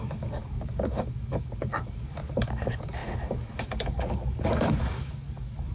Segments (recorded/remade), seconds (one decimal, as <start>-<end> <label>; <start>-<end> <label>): 0.0-5.7 remade